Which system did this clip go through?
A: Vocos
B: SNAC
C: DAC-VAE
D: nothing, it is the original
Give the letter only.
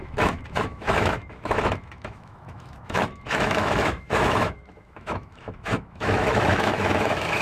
C